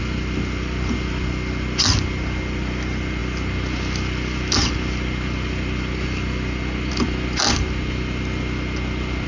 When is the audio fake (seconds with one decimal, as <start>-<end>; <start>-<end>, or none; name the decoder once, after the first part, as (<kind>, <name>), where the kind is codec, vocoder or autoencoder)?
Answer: none